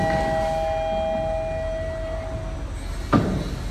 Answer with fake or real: real